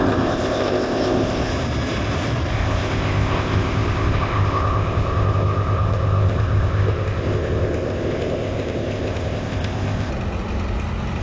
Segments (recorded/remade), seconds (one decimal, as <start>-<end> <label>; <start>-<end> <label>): 0.0-1.5 remade; 1.5-2.5 recorded; 2.5-10.1 remade; 10.1-11.2 recorded